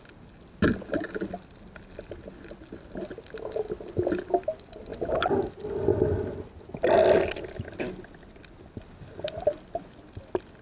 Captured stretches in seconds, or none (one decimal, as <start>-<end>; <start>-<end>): 0.0-10.6